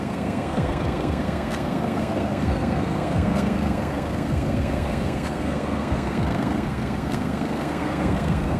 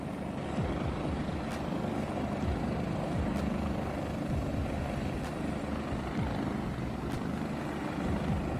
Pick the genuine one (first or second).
second